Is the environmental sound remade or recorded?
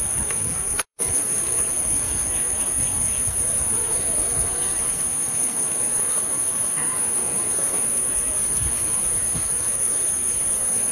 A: remade